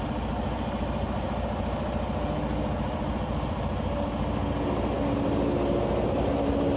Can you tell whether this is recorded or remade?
recorded